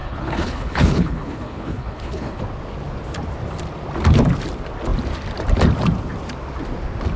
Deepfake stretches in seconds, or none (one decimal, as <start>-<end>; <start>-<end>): 0.0-2.4